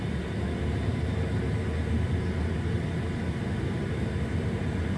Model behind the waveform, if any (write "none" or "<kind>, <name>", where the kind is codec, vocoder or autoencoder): none